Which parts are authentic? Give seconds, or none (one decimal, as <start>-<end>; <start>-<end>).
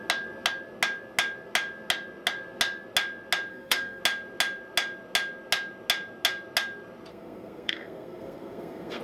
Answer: 0.0-3.5; 4.0-7.1